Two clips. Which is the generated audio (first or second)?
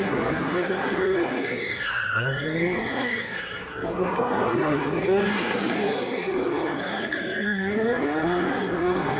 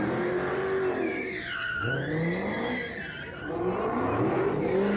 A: first